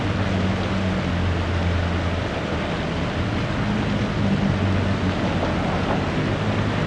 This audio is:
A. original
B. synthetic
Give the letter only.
A